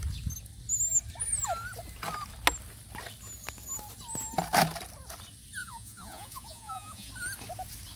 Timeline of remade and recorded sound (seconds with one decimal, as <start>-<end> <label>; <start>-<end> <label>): 0.0-5.6 recorded; 5.6-7.1 remade; 7.1-8.0 recorded